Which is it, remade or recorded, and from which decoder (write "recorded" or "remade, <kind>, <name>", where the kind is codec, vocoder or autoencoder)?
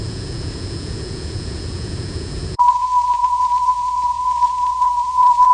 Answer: remade, vocoder, Vocos